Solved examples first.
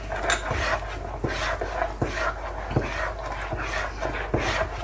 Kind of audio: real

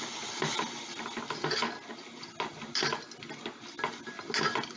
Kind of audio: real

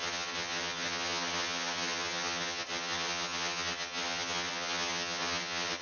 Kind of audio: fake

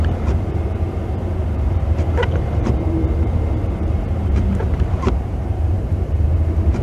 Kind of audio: fake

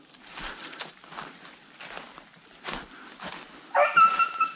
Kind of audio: real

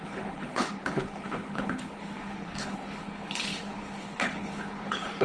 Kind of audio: fake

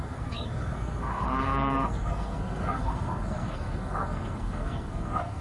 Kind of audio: fake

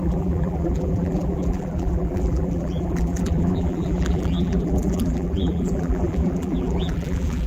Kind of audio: fake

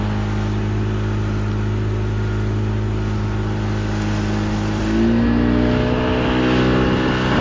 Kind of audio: real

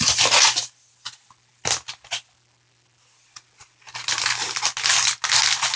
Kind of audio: real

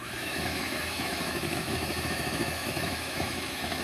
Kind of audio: fake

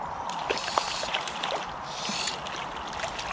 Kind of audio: real